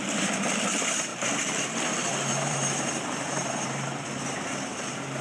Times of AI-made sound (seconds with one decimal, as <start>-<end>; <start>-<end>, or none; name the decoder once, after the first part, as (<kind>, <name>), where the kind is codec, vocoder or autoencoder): 1.1-4.2 (vocoder, BigVGAN v2)